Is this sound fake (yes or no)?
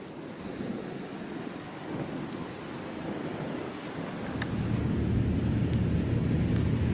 no